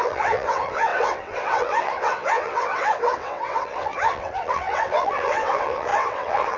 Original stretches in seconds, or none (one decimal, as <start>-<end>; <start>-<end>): none